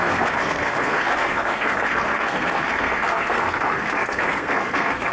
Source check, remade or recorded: remade